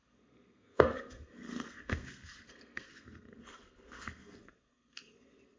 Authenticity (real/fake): fake